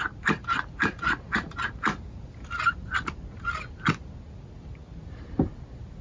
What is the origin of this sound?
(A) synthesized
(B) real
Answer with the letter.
B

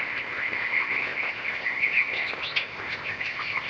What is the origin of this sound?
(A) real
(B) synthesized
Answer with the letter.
B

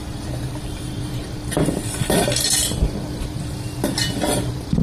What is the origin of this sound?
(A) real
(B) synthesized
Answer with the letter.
B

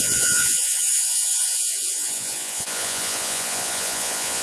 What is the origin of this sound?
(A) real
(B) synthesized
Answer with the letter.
B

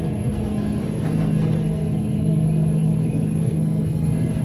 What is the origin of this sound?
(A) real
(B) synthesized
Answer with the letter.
B